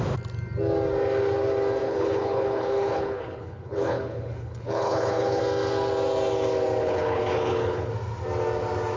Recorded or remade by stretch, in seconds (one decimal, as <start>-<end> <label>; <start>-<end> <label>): 0.0-1.8 recorded; 1.8-5.4 remade; 5.4-6.8 recorded; 6.8-7.9 remade; 7.9-9.0 recorded